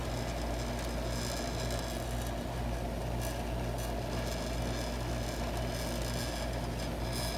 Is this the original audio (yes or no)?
yes